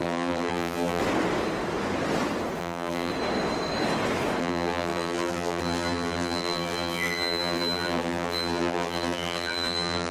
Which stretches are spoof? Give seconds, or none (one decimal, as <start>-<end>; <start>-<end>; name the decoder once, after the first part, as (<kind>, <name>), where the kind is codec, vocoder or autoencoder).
0.0-1.0 (vocoder, BigVGAN v2); 2.6-3.1; 4.4-10.1